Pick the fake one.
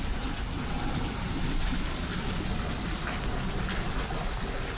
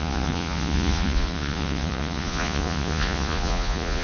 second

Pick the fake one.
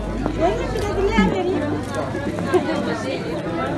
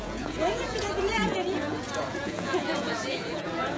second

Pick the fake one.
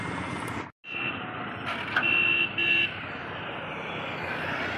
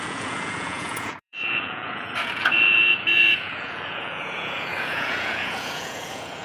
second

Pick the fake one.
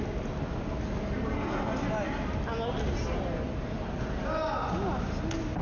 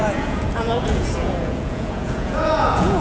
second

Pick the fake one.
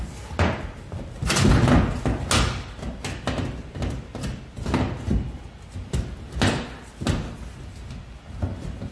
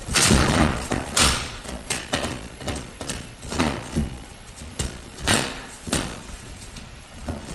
second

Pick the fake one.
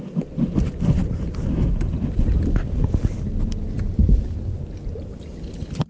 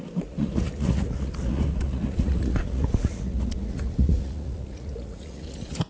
second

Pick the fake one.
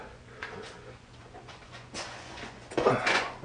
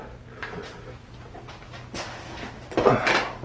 first